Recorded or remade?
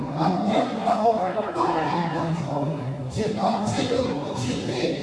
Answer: remade